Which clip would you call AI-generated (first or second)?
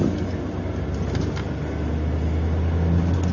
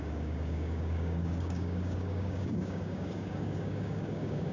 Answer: second